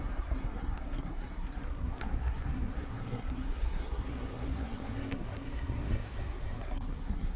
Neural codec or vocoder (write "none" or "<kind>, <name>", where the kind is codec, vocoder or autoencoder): codec, SNAC